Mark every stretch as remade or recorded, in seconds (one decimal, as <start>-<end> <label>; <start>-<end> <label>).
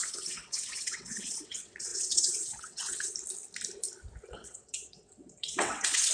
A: 0.0-3.1 remade; 3.1-4.4 recorded; 4.4-6.1 remade